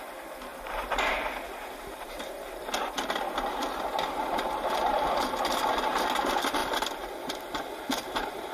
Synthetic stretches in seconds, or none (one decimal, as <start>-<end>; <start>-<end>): none